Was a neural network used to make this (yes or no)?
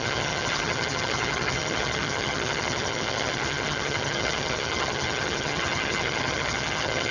yes